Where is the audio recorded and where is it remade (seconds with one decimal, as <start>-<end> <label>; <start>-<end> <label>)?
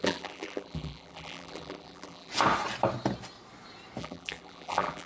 0.0-2.3 remade; 2.3-4.0 recorded; 4.0-5.1 remade